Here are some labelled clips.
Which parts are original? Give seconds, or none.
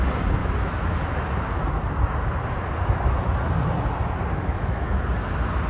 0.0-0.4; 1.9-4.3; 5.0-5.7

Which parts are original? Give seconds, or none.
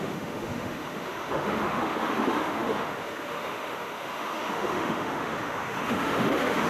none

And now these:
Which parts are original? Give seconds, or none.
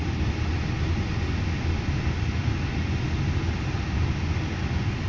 0.0-5.1